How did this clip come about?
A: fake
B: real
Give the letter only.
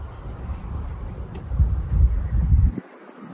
B